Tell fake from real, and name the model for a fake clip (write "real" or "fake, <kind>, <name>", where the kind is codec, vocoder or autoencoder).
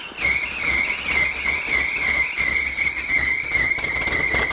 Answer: real